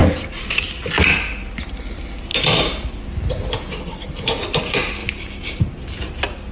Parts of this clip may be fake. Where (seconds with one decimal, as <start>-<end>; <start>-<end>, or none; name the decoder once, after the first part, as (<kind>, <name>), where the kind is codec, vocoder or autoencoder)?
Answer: 0.0-0.9 (vocoder, BigVGAN v2); 2.3-3.1; 5.0-5.8

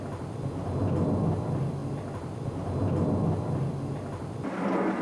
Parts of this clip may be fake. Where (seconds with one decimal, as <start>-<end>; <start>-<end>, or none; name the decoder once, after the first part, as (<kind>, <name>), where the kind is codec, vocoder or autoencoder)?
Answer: none

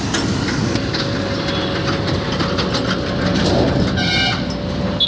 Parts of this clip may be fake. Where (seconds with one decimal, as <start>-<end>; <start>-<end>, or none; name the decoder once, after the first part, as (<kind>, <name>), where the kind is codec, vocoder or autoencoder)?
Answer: none